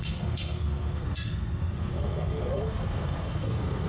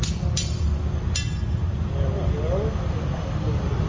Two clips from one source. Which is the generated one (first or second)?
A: first